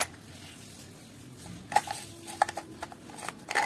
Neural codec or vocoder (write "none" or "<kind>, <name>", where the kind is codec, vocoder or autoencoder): none